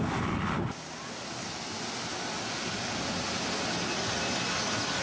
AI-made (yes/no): no